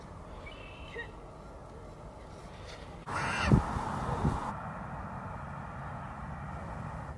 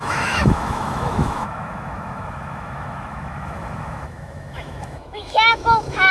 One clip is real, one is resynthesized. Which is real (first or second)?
first